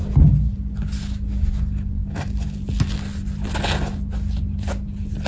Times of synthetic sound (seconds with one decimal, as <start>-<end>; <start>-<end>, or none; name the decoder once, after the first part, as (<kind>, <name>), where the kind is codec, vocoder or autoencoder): none